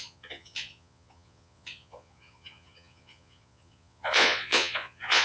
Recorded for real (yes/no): no